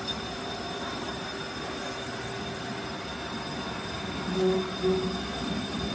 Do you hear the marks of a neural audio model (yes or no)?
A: no